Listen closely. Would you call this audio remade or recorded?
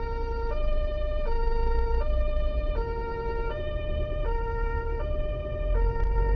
recorded